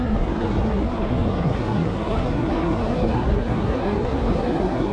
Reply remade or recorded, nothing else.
remade